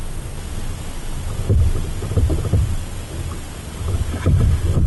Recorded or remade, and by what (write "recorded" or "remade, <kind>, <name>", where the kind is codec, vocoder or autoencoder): recorded